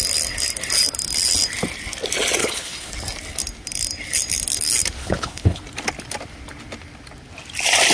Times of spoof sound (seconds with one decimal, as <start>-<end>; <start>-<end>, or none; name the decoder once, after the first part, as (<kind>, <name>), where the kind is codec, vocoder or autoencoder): 2.4-2.9 (codec, HILCodec); 5.0-5.6